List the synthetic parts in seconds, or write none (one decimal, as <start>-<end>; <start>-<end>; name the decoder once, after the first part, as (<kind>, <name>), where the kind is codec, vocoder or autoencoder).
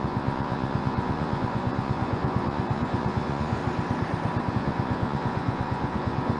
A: 0.0-3.6 (vocoder, Vocos); 4.5-6.4